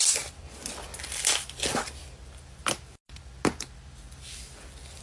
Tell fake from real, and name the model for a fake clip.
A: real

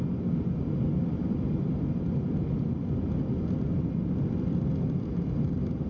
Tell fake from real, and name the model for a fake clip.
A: real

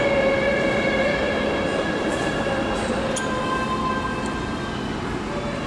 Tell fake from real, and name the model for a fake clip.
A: real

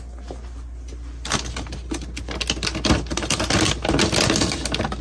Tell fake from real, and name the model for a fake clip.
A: real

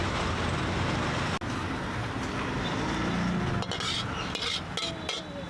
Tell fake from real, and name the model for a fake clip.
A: real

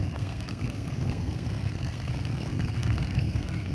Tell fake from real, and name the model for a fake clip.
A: fake, codec, SNAC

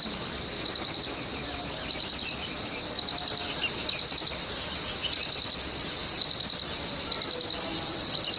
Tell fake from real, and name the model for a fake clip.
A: real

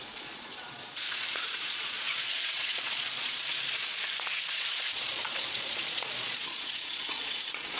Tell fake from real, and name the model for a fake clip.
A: fake, vocoder, Vocos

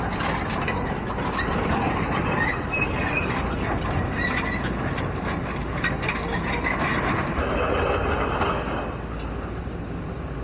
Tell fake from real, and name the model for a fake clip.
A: real